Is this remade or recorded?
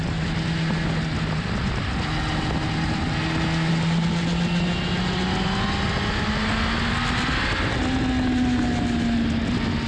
recorded